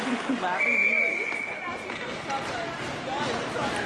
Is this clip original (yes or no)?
yes